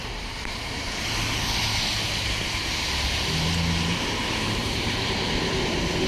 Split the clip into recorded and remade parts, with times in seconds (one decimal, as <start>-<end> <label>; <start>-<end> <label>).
0.0-4.6 recorded; 4.6-5.3 remade; 5.3-6.1 recorded